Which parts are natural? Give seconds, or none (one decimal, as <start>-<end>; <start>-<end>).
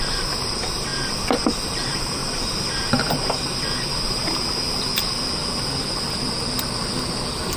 0.0-7.6